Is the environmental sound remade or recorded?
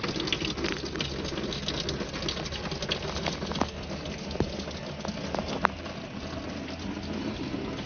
recorded